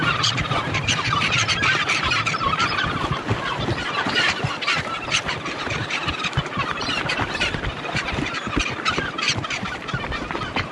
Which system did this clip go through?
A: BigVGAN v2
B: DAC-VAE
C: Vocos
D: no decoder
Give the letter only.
A